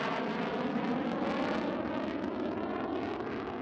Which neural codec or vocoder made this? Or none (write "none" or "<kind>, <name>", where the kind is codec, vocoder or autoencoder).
none